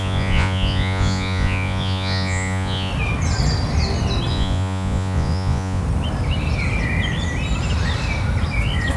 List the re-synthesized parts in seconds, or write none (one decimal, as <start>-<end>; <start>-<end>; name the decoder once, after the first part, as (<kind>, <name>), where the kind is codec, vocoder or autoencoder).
0.0-2.9 (vocoder, Vocos); 4.3-5.8